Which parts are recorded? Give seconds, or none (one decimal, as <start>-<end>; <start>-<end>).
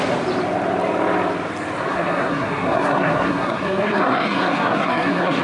0.0-1.9